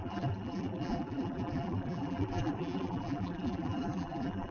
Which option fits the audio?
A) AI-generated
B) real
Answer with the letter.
A